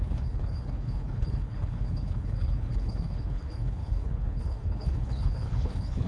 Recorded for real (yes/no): no